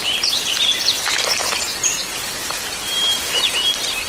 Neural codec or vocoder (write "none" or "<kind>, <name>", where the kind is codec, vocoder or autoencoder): none